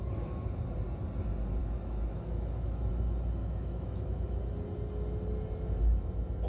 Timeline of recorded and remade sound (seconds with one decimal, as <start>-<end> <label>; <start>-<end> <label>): 0.0-1.6 recorded; 1.6-2.9 remade; 2.9-3.4 recorded; 3.4-4.4 remade; 4.4-6.5 recorded